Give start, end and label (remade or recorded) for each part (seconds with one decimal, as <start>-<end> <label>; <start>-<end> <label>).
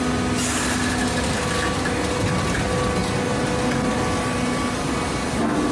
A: 0.0-5.7 recorded